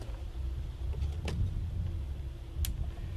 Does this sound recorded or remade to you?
recorded